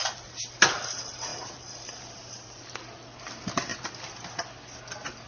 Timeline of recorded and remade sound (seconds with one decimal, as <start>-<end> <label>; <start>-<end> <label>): 0.0-5.3 recorded